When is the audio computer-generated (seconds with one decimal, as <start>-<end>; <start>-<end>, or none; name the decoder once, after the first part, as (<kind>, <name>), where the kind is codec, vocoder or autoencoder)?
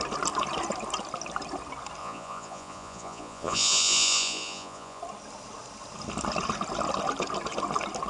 2.0-5.0 (vocoder, Vocos)